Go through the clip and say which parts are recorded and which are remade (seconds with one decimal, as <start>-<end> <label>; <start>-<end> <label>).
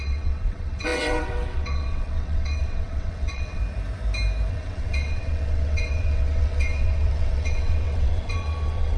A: 0.0-3.6 remade; 3.6-4.5 recorded; 4.5-9.0 remade